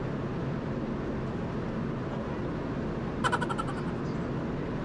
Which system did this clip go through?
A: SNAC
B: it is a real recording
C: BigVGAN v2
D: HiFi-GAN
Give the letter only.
B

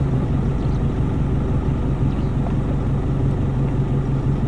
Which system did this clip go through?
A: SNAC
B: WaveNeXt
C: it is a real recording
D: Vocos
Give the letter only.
C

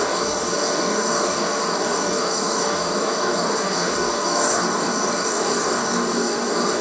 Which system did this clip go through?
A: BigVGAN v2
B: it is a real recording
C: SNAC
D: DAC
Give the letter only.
D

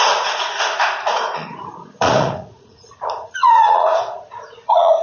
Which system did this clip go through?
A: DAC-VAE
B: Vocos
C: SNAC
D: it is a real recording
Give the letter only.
B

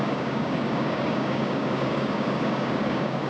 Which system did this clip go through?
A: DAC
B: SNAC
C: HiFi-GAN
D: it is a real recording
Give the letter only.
A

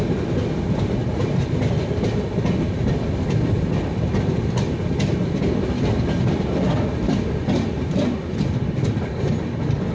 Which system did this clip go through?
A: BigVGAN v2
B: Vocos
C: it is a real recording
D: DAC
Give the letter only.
C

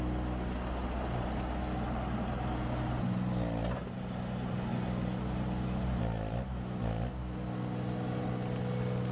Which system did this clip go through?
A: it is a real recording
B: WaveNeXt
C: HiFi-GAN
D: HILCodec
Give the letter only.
A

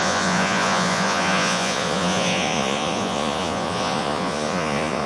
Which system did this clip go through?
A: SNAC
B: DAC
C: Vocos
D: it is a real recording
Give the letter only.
C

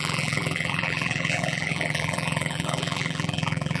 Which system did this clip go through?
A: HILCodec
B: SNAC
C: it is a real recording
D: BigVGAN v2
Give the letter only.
D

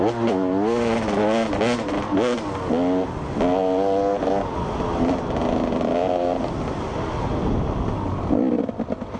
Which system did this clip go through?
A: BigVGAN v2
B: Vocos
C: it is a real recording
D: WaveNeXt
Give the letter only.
C